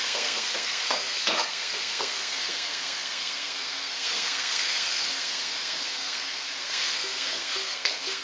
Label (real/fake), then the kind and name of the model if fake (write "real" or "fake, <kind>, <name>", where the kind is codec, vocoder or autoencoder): fake, codec, SNAC